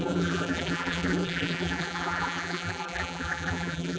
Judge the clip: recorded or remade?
remade